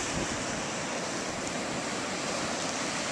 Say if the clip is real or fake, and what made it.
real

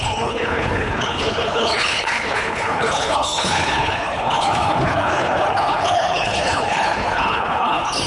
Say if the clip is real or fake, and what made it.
fake, codec, HILCodec